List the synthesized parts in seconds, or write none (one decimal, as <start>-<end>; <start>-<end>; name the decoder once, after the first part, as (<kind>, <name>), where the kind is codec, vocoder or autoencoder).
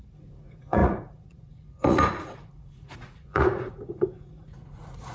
0.0-5.1 (vocoder, Vocos)